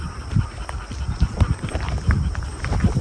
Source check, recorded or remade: remade